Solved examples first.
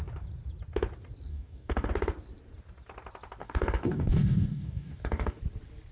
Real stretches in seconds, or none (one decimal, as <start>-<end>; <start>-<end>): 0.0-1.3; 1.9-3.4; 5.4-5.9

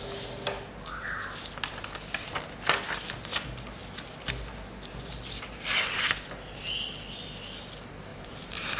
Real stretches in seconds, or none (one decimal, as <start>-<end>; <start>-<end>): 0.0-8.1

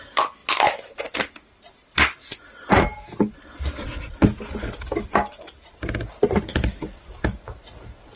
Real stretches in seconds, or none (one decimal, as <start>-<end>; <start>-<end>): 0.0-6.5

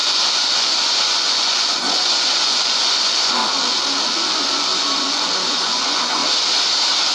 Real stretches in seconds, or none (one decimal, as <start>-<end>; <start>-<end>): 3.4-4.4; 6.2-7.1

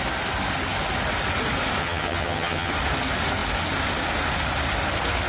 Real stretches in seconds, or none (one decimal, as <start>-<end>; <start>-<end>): 0.0-1.8; 2.7-5.3

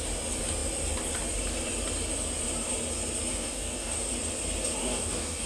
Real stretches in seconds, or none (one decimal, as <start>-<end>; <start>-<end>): 0.0-3.3; 4.1-4.8